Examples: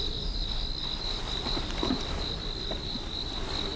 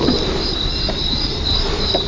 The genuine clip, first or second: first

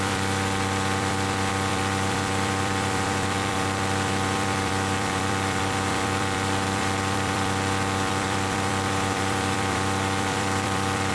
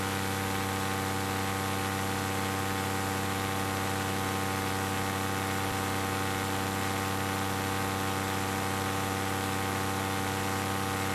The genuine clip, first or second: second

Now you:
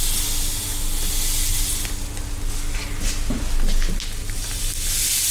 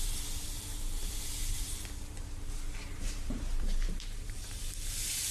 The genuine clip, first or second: first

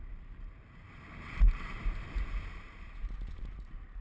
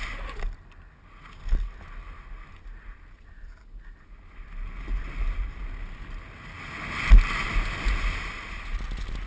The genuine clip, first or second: second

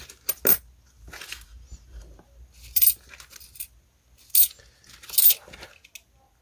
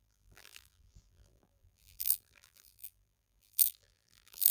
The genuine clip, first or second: first